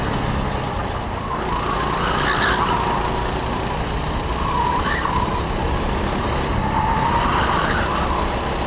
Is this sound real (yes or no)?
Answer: yes